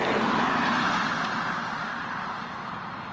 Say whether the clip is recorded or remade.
remade